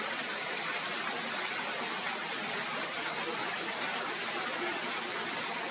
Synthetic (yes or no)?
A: no